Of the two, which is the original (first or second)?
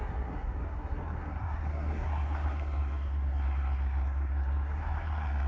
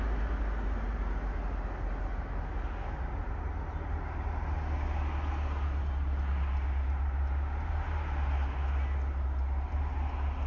second